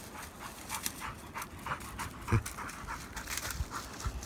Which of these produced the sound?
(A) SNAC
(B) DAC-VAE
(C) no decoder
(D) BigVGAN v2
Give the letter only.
C